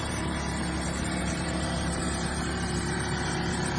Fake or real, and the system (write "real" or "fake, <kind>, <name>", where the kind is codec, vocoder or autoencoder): fake, vocoder, BigVGAN v2